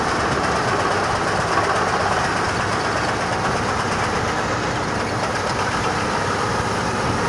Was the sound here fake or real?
real